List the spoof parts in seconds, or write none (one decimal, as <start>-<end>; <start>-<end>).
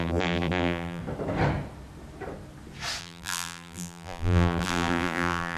0.0-1.0; 3.0-5.6